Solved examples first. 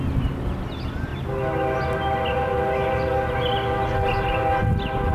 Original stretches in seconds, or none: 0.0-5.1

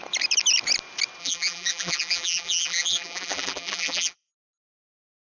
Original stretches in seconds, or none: 0.0-1.2; 4.3-5.2

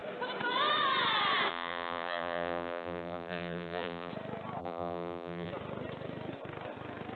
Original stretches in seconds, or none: 0.0-1.5; 4.1-4.6; 5.5-7.2

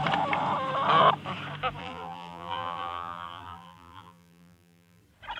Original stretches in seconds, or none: 0.0-1.8; 5.0-5.4

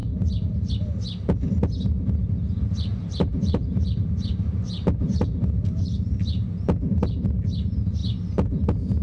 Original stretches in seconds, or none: 0.7-2.9; 7.3-8.0; 8.6-9.0